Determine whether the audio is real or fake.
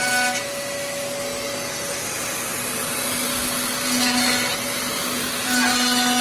real